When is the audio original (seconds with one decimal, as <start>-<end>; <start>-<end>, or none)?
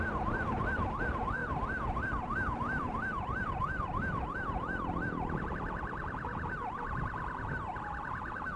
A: 6.0-8.6